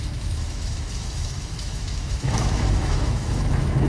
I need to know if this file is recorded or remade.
remade